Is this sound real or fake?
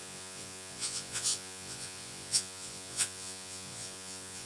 fake